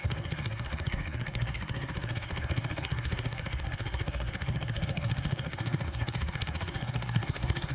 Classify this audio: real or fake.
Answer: fake